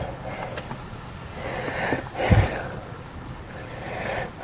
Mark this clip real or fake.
real